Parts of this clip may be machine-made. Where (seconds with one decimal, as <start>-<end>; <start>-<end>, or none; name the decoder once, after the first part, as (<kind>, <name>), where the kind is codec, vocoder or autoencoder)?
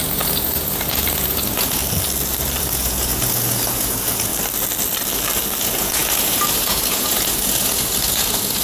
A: 0.0-1.8 (vocoder, Vocos); 2.6-4.3; 5.6-8.6